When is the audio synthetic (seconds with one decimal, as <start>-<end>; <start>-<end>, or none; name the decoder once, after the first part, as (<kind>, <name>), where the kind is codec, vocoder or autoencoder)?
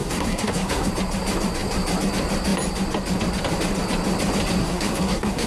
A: 0.0-0.9 (codec, SNAC); 4.6-5.5